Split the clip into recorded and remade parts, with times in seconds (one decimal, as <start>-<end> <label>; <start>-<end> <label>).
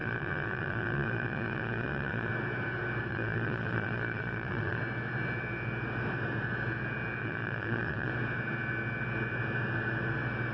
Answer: 0.0-2.3 remade; 2.3-3.1 recorded; 3.1-4.8 remade; 4.8-7.2 recorded; 7.2-8.1 remade; 8.1-10.5 recorded